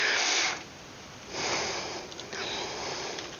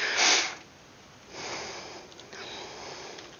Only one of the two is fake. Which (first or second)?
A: first